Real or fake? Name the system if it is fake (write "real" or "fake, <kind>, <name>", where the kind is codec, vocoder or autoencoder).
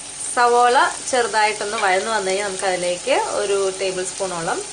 real